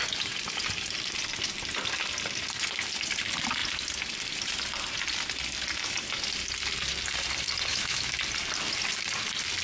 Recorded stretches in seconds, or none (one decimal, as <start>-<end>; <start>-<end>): 0.0-7.7; 8.2-9.6